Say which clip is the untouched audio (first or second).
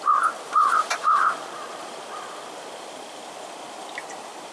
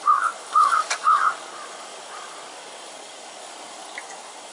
first